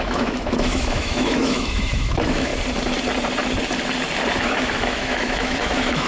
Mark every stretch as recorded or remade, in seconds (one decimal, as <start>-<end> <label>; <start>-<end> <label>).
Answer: 0.0-2.5 remade; 2.5-4.4 recorded; 4.4-6.1 remade